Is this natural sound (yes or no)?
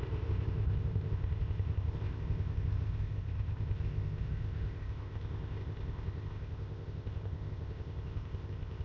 no